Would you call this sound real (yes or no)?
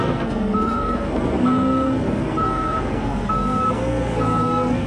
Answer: no